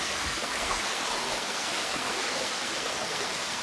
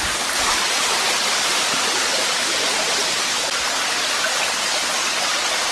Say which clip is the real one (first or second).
second